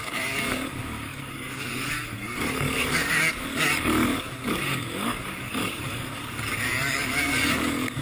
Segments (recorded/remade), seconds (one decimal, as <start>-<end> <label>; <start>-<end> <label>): 0.0-8.0 remade